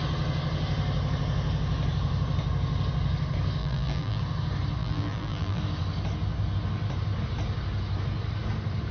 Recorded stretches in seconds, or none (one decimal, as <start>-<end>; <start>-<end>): 0.0-3.6; 4.2-4.8; 5.6-8.9